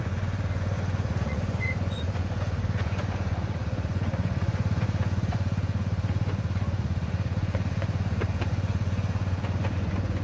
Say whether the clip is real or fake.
fake